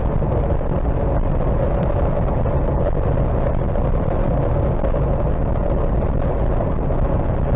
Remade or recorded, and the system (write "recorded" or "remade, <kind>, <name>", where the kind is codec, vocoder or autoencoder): recorded